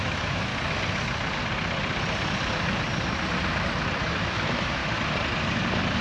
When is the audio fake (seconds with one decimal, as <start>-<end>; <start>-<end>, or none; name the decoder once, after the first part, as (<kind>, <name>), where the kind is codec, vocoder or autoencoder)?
0.0-0.5 (autoencoder, DAC-VAE); 4.1-4.8